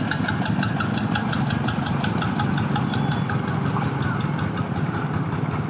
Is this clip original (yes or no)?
yes